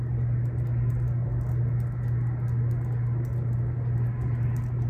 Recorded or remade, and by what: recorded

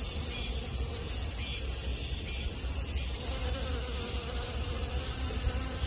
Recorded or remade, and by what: recorded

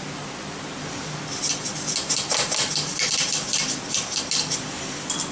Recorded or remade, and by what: recorded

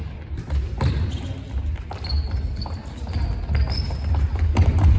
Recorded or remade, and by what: recorded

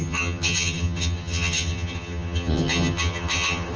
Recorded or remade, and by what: remade, vocoder, HiFi-GAN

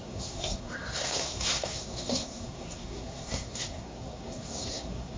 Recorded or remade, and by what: remade, codec, SNAC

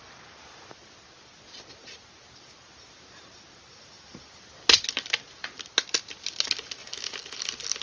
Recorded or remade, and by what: recorded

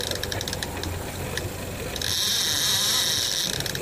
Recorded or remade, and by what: recorded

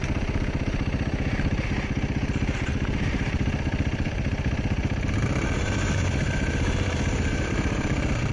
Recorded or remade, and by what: remade, vocoder, BigVGAN v2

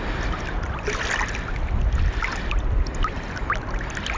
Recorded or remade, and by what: recorded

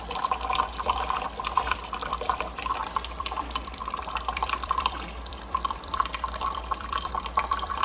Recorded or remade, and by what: remade, vocoder, BigVGAN v2